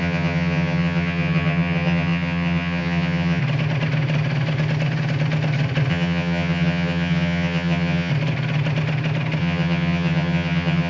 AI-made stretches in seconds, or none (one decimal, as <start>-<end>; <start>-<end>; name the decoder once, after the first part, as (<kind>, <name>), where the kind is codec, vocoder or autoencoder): 0.0-3.4 (vocoder, HiFi-GAN); 5.9-8.1; 9.4-10.9

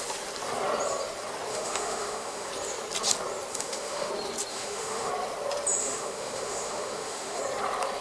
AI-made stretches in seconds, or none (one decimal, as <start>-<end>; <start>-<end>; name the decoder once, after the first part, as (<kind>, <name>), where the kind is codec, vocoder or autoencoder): 1.5-2.5 (autoencoder, DAC-VAE); 3.5-4.1; 4.5-5.1; 5.8-7.4

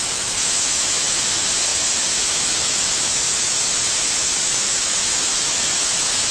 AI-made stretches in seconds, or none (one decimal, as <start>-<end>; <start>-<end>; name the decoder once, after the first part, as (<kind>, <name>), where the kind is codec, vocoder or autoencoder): 0.0-6.3 (autoencoder, DAC-VAE)

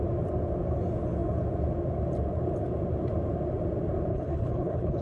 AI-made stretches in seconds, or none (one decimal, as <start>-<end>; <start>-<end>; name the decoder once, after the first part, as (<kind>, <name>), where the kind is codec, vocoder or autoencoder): 4.1-5.0 (codec, HILCodec)

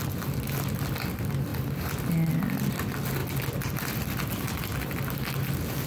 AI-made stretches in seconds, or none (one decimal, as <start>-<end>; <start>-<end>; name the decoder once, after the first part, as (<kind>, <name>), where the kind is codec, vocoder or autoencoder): none

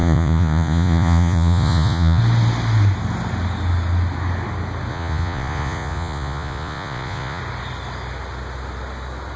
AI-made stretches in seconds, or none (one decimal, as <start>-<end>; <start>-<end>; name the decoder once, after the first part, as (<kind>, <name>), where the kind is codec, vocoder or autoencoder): 0.0-2.2 (vocoder, Vocos); 4.9-7.4

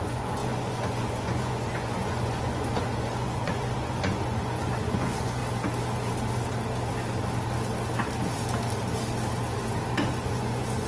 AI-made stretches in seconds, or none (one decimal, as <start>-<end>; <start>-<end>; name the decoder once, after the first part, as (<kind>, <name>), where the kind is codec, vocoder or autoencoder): 0.0-5.4 (vocoder, Vocos); 10.1-10.9